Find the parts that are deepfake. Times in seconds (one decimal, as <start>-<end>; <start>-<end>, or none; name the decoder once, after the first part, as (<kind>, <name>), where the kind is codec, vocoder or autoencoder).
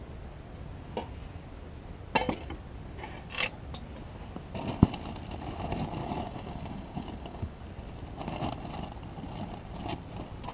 6.0-7.6 (codec, DAC)